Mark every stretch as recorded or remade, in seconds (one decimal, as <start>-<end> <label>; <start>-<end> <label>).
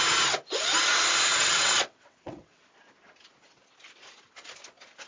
0.0-1.3 recorded; 1.3-2.6 remade; 2.6-5.1 recorded